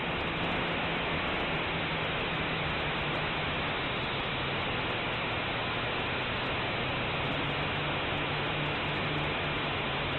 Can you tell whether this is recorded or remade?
recorded